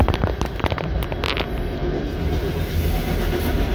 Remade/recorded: recorded